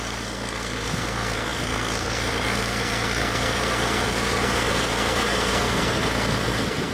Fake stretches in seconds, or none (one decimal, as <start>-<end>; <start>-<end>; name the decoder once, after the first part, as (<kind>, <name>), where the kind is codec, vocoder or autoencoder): 0.0-6.9 (codec, SNAC)